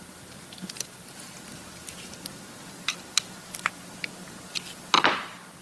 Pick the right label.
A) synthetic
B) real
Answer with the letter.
B